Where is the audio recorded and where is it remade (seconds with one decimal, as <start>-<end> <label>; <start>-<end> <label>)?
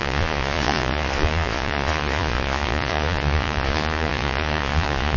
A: 0.0-5.2 remade